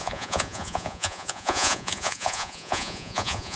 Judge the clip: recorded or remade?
remade